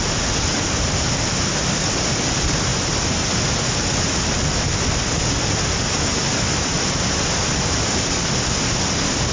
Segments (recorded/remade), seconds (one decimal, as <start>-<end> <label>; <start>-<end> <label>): 0.0-9.3 recorded